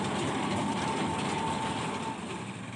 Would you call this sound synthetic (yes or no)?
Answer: no